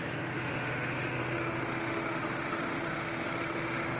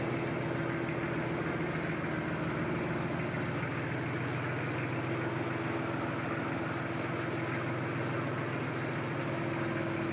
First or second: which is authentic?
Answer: second